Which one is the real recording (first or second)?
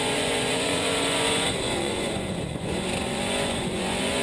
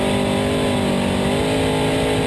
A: second